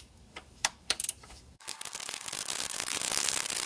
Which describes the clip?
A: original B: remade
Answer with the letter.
B